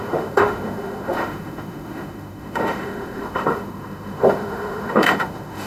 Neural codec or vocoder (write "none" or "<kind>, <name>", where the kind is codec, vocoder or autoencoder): autoencoder, DAC-VAE